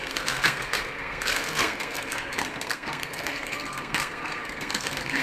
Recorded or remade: remade